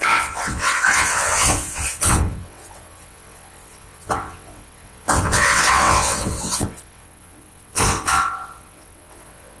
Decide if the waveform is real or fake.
fake